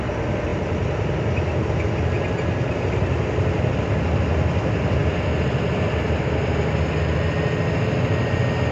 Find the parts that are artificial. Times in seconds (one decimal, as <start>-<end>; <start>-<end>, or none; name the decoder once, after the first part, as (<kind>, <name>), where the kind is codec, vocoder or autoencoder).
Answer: none